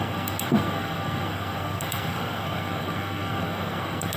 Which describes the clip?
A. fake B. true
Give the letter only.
A